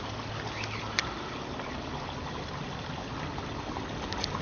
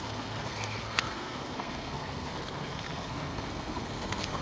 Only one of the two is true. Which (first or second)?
first